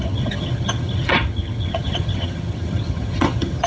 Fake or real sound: fake